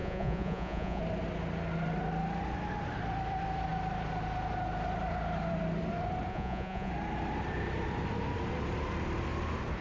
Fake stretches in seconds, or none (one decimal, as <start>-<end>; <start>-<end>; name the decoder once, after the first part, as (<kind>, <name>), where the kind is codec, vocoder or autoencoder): 0.0-1.0 (vocoder, Vocos); 6.3-6.9